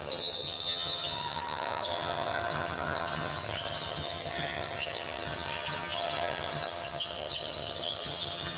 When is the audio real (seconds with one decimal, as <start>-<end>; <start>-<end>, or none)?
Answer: none